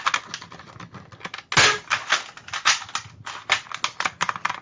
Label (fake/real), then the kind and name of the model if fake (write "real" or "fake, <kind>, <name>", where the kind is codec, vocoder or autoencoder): real